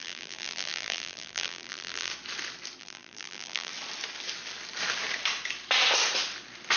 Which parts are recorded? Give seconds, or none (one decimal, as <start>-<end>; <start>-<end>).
2.1-2.8; 3.7-6.8